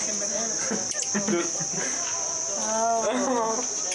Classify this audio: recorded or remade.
recorded